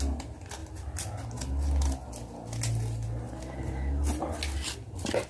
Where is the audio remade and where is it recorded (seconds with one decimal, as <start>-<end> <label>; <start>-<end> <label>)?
0.0-5.3 recorded